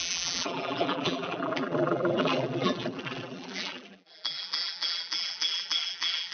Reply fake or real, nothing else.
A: fake